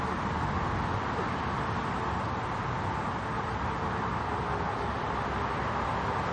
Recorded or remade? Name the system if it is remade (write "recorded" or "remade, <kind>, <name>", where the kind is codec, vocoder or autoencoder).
recorded